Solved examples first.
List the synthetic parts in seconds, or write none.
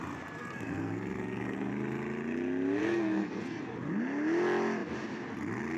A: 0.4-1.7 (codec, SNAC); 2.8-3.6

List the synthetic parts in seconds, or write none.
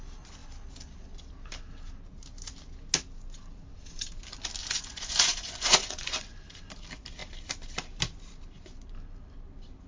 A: 4.6-6.3 (vocoder, Vocos)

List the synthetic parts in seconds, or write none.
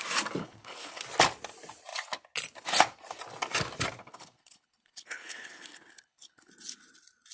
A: 0.4-1.0 (codec, HILCodec); 4.0-6.5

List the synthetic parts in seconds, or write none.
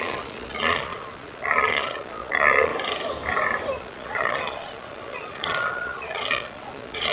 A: 0.0-2.7 (vocoder, Vocos); 3.8-7.1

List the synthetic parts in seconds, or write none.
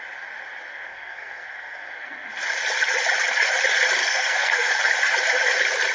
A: 0.7-2.3 (codec, SNAC); 4.0-4.7